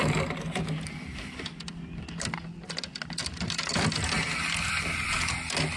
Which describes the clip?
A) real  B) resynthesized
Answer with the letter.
A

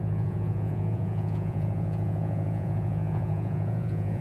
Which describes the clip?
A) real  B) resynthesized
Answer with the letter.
B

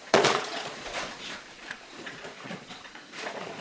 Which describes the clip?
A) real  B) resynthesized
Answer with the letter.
B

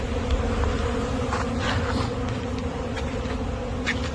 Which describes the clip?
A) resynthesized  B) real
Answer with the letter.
B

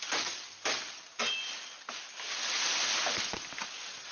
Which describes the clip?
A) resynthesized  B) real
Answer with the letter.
B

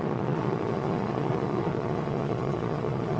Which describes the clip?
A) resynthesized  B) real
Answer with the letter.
A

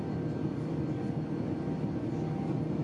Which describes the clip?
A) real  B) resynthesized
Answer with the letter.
A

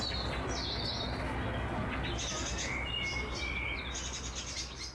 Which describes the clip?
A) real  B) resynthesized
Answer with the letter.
A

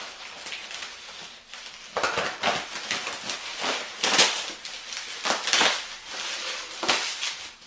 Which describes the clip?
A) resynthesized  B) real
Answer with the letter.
B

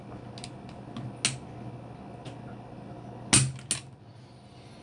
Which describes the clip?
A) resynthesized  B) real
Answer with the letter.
B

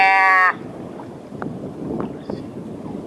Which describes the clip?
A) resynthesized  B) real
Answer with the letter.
B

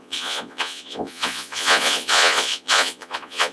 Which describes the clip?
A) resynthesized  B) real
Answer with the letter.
A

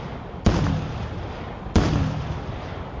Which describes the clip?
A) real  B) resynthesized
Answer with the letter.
A